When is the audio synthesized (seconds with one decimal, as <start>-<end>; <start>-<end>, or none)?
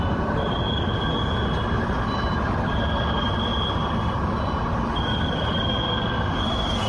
none